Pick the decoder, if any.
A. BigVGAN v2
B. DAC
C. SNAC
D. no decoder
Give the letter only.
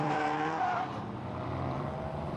A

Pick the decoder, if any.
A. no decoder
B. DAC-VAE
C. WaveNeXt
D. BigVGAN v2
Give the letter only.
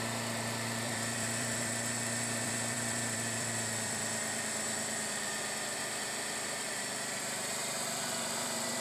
D